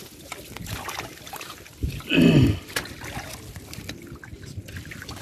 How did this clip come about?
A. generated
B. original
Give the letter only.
B